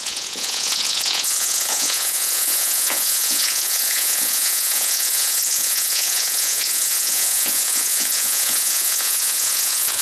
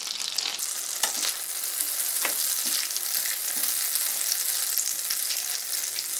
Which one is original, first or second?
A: second